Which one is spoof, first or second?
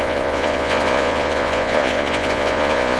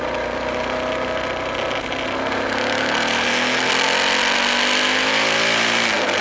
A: first